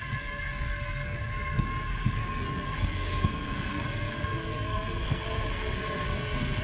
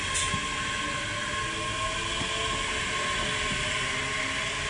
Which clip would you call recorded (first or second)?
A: second